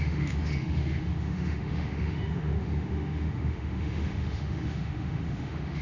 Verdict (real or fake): fake